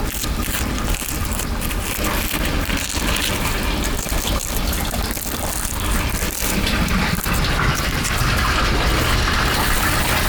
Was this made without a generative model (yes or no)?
yes